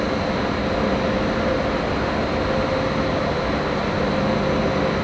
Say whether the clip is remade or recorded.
recorded